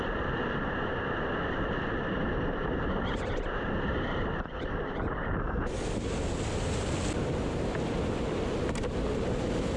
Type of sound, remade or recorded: recorded